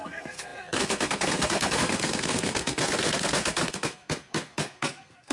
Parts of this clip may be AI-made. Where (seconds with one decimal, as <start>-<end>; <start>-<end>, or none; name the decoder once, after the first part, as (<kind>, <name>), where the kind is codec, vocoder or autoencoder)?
0.0-5.3 (codec, SNAC)